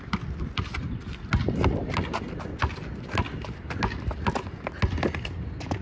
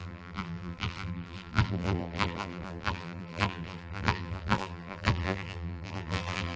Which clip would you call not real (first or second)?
second